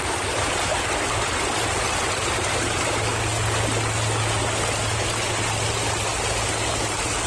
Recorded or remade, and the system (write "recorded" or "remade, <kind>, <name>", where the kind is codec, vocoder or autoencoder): recorded